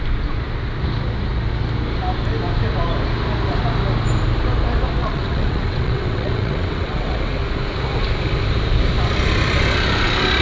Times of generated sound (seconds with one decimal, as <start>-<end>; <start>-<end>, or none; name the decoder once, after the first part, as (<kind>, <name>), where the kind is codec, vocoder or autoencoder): 5.0-7.4 (vocoder, WaveNeXt)